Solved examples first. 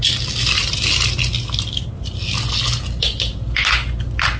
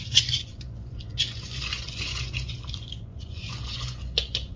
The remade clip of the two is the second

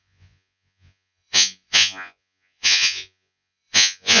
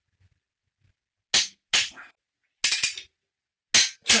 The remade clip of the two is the first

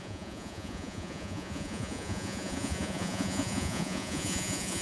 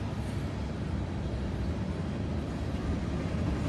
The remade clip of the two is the first